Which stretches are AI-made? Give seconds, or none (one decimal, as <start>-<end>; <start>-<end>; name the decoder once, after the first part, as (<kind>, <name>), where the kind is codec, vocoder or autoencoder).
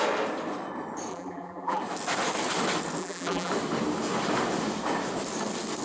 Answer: 1.1-1.8 (vocoder, BigVGAN v2); 3.0-3.5